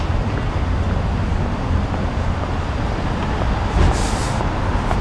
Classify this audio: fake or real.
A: real